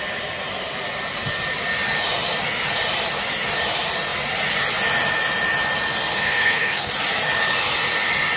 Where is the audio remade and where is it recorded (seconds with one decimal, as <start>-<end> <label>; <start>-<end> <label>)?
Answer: 0.0-6.1 recorded; 6.1-6.9 remade; 6.9-8.4 recorded